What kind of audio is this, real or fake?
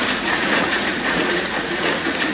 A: fake